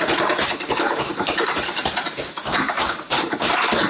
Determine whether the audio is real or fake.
fake